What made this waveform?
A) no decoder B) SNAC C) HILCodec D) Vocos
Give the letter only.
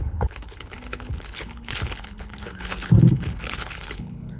C